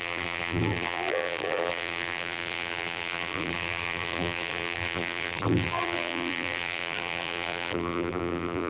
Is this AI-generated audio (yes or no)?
yes